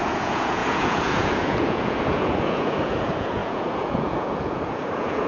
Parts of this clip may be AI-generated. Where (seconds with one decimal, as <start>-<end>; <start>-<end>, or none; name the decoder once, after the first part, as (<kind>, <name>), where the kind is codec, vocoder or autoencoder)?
0.0-5.3 (vocoder, Vocos)